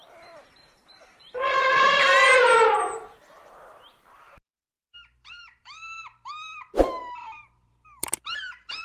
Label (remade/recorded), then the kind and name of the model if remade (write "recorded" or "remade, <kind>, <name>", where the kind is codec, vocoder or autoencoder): remade, vocoder, BigVGAN v2